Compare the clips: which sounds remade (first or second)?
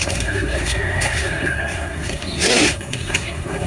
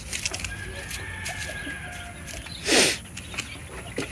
first